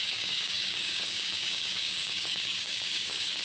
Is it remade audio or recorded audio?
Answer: remade